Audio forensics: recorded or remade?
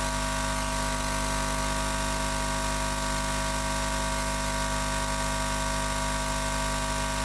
recorded